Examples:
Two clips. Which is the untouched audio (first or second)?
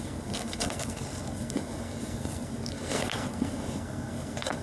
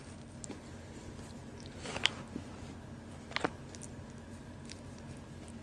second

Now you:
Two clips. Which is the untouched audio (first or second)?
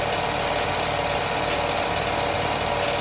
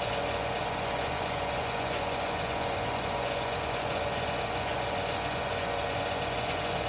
first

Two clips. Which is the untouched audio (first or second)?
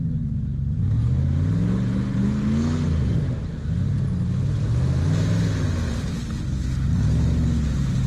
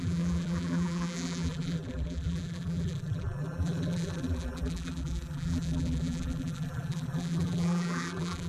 first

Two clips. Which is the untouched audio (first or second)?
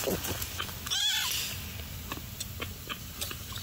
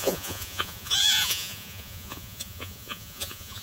first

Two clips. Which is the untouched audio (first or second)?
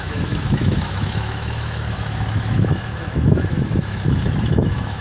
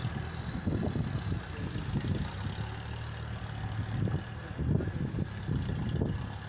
second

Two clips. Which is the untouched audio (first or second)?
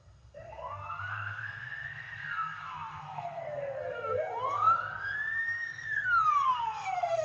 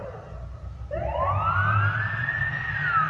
second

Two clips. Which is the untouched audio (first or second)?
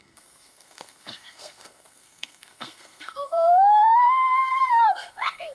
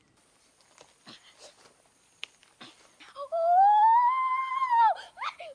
second